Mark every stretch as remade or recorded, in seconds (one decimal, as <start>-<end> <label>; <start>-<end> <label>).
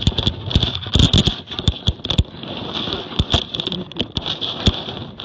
0.0-1.2 recorded; 1.2-4.3 remade; 4.3-5.2 recorded